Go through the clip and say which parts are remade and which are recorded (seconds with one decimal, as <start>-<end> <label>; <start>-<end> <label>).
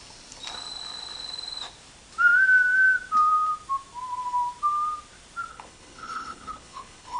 0.0-5.5 recorded; 5.5-7.2 remade